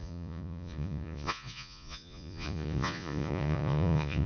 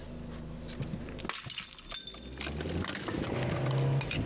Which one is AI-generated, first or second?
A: first